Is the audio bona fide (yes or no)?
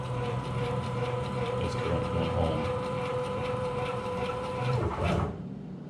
no